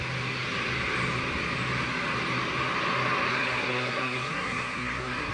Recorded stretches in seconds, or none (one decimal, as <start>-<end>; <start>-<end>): 0.0-3.3